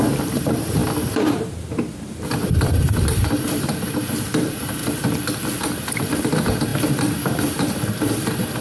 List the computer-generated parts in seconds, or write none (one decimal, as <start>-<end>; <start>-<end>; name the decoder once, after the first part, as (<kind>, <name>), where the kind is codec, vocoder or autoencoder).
0.0-4.8 (vocoder, BigVGAN v2); 5.6-8.6